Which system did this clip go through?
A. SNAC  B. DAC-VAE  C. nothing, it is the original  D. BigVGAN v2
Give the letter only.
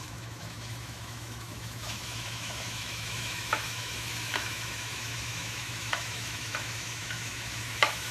B